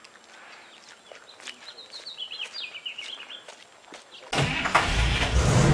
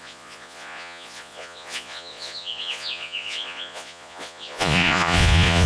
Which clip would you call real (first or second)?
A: first